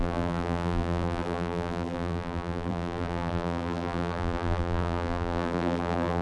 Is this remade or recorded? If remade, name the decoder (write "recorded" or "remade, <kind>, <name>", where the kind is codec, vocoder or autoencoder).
remade, vocoder, BigVGAN v2